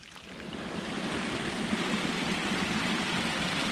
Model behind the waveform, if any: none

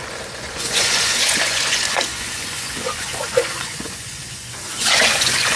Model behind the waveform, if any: vocoder, Vocos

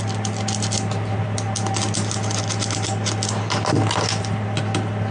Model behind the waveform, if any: none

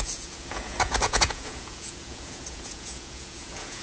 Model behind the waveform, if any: vocoder, Vocos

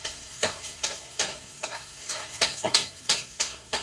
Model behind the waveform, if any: codec, SNAC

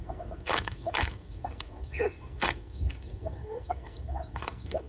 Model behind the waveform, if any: codec, SNAC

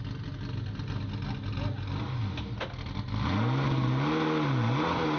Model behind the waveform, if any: none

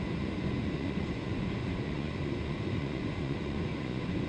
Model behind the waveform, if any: vocoder, Vocos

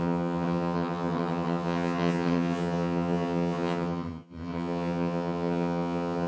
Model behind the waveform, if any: vocoder, HiFi-GAN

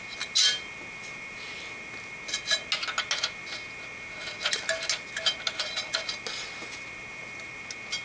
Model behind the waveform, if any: none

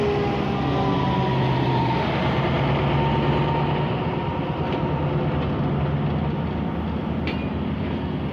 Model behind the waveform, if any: none